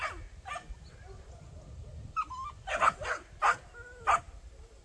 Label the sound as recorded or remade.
recorded